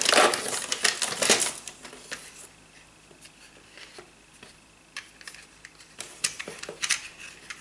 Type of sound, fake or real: real